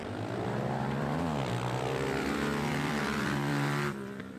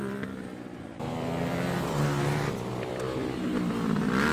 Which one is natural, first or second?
second